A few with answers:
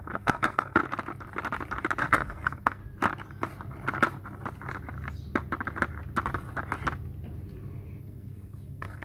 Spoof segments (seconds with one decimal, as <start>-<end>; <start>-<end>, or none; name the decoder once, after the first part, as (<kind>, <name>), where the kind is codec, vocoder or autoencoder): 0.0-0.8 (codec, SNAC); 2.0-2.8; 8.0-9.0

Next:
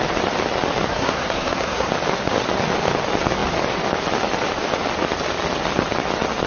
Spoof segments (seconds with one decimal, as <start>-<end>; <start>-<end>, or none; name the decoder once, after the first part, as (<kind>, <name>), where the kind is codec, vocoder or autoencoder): 0.9-1.9 (codec, SNAC)

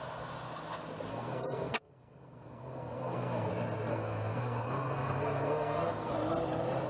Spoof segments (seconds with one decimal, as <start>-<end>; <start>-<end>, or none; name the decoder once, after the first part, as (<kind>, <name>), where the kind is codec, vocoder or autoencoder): 1.1-3.5 (codec, SNAC); 3.9-6.1

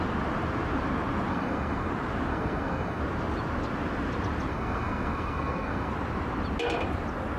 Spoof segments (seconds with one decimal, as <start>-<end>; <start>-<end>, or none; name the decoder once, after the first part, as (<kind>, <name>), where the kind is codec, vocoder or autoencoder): 1.3-1.9 (codec, SNAC); 2.3-3.0; 4.5-5.9

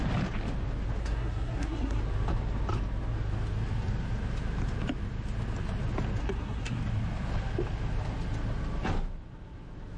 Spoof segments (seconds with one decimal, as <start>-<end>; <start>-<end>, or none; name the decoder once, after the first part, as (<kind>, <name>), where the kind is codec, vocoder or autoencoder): 1.0-2.0 (codec, SNAC); 6.2-6.8

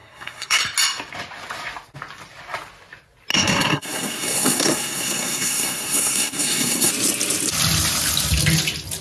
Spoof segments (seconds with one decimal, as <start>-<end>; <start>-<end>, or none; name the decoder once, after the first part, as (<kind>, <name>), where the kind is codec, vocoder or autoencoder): 0.0-0.6 (codec, SNAC); 3.3-6.9

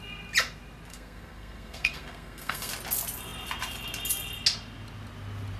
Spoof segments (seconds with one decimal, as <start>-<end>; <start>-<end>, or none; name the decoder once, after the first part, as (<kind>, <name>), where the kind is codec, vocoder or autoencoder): 0.9-2.7 (codec, SNAC)